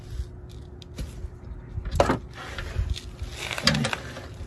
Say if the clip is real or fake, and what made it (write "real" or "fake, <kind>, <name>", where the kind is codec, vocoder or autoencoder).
real